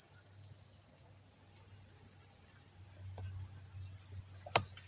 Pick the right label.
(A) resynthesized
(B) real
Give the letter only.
B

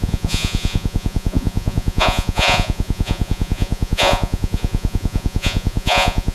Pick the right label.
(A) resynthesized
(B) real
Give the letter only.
A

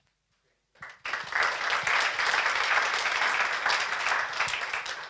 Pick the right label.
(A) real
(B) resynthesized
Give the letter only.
A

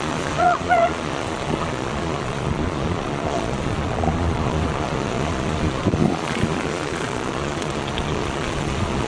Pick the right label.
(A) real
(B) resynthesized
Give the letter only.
B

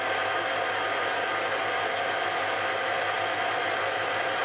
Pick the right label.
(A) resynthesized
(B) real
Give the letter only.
B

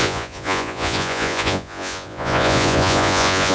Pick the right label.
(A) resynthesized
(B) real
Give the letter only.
A